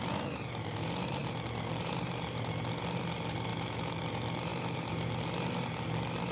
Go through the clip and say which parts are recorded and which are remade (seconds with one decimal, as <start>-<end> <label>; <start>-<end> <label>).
0.0-3.5 recorded; 3.5-4.0 remade; 4.0-6.3 recorded